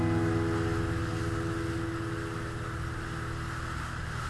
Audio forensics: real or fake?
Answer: real